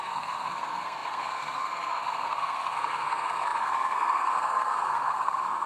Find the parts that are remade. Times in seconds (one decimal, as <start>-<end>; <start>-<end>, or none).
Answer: 0.0-5.7

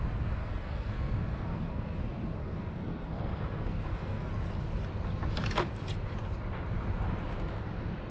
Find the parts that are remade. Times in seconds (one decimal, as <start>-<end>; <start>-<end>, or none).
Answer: 0.4-2.0; 2.4-4.3

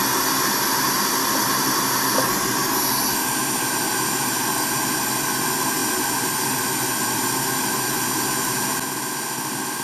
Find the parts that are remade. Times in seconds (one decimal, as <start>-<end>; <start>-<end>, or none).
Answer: none

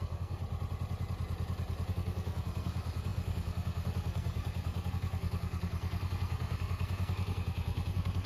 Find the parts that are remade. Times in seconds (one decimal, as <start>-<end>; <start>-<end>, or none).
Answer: 0.0-0.4; 1.9-8.3

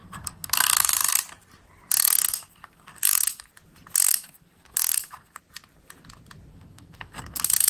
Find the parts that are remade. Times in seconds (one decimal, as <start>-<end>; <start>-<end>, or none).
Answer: 0.0-1.2; 2.0-3.5; 4.1-5.4; 6.5-7.7

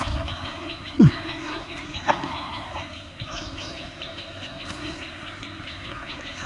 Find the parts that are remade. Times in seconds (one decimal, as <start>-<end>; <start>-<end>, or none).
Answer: 0.0-6.5

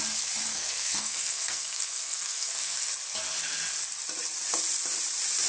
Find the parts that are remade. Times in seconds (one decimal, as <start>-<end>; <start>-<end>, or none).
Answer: 0.5-2.9

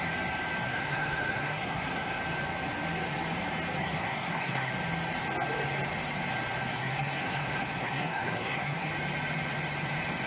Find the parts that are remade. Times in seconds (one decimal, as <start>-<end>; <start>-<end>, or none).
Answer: 0.7-2.2; 3.8-4.7; 6.7-8.9